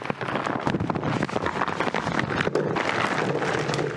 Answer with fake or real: real